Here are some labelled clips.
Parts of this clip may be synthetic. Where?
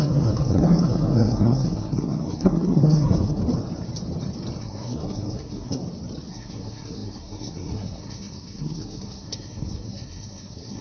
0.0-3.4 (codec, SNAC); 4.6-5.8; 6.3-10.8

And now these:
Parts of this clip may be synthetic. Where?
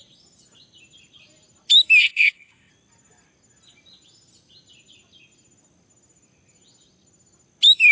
2.0-2.7 (codec, ZipCodec)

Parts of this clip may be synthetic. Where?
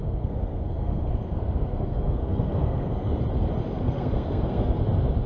0.0-3.2 (codec, SNAC); 3.7-4.8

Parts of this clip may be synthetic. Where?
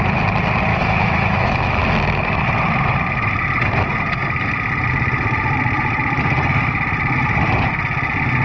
0.7-1.8 (autoencoder, DAC-VAE)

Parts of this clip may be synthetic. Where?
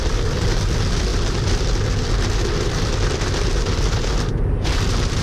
none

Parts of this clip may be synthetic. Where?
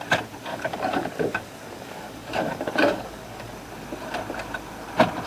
0.5-3.5 (codec, DAC)